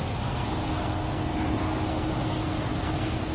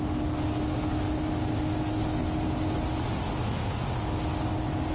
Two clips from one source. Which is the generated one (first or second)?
first